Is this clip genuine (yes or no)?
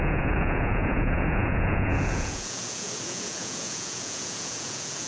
no